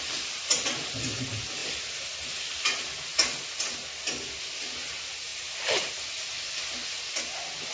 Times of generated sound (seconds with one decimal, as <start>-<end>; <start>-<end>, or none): none